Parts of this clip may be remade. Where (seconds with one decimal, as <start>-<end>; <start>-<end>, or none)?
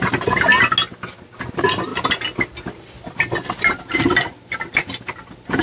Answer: 0.0-0.5; 1.5-1.9